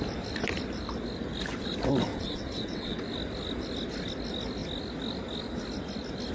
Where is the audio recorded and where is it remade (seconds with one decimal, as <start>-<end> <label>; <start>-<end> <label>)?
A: 0.0-2.1 recorded; 2.1-3.0 remade; 3.0-6.3 recorded